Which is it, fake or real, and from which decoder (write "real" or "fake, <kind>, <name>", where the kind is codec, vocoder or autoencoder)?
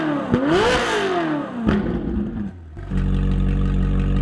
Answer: real